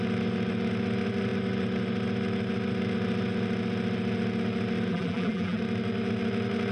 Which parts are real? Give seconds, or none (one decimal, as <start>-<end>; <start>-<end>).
0.0-4.9; 5.6-6.7